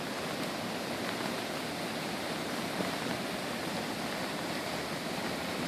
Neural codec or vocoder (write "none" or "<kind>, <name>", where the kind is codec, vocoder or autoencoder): none